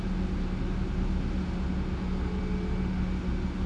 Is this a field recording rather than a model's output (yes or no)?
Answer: yes